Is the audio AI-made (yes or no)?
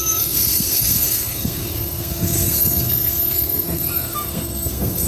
yes